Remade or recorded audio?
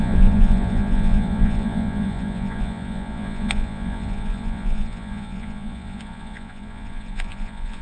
remade